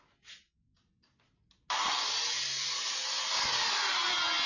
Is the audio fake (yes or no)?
no